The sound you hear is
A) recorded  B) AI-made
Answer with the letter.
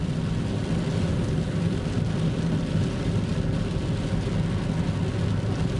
A